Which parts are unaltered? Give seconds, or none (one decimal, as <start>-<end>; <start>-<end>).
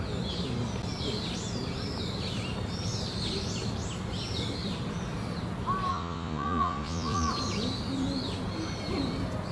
0.0-5.9; 7.3-9.5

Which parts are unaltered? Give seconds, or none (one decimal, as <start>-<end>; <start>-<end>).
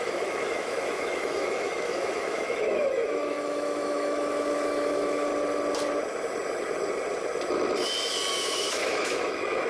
5.3-8.3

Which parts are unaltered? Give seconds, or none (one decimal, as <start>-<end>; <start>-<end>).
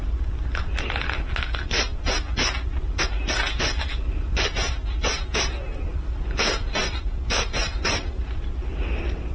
0.0-5.9; 8.7-9.3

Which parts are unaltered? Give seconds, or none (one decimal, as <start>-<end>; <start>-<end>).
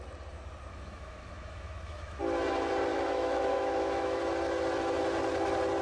0.0-0.7; 2.2-2.9; 4.2-5.8